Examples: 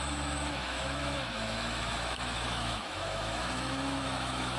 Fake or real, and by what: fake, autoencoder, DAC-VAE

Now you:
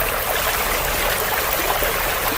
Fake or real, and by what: real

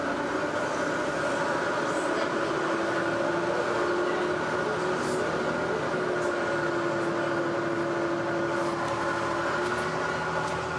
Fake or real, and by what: real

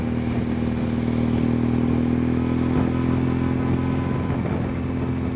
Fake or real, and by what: real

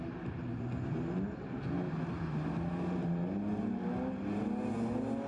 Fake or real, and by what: real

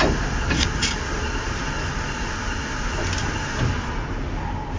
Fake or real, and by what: real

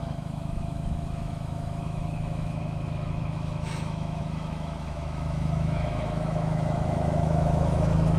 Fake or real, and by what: fake, autoencoder, DAC-VAE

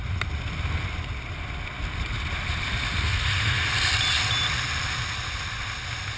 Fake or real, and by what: real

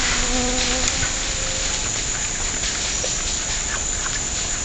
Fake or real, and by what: real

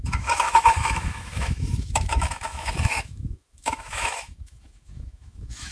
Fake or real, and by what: fake, autoencoder, DAC-VAE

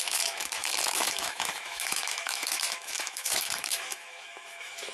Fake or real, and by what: fake, autoencoder, DAC-VAE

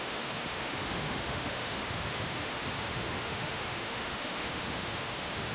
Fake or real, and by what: fake, autoencoder, DAC-VAE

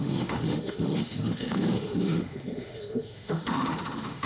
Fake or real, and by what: fake, autoencoder, DAC-VAE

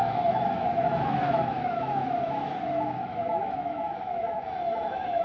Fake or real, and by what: fake, autoencoder, DAC-VAE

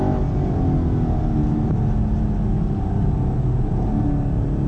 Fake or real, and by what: real